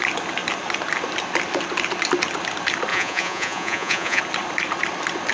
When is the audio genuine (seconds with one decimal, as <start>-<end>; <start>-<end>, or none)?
0.0-2.9; 4.2-5.3